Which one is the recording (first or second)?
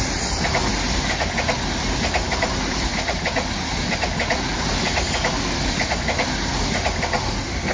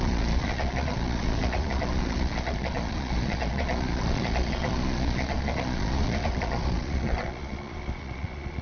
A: first